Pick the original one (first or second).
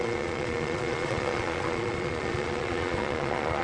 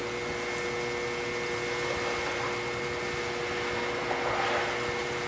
second